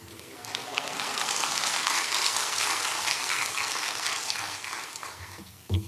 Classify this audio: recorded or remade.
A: remade